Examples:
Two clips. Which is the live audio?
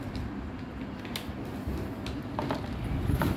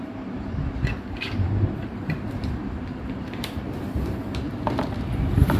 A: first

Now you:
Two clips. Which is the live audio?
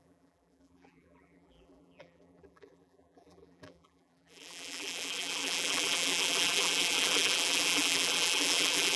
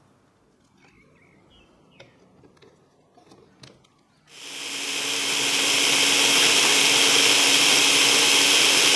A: second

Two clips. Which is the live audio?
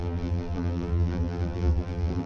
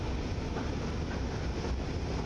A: second